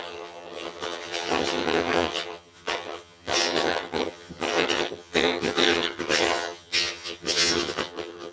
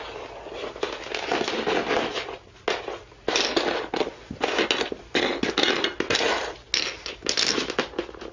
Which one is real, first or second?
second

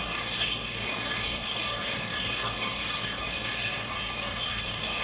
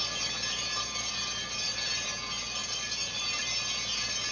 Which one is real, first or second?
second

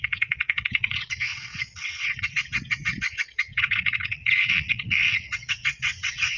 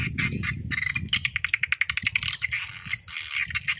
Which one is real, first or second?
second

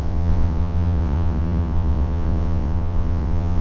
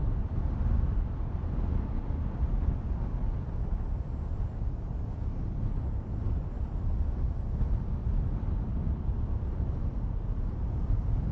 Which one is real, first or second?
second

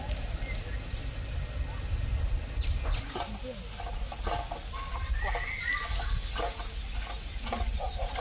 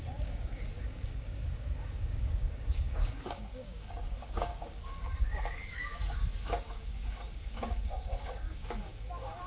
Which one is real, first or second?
first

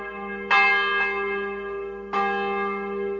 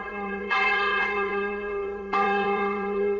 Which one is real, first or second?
first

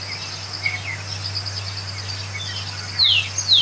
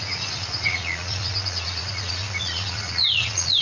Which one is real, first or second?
first